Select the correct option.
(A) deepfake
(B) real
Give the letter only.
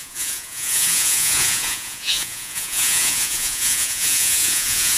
A